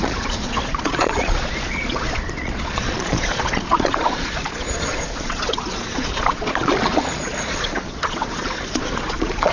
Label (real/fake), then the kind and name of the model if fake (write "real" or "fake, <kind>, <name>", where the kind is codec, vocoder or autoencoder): fake, vocoder, Vocos